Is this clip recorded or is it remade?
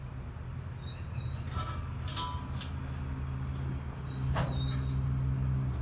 recorded